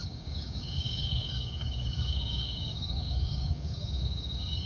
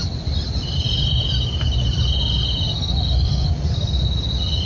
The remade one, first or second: first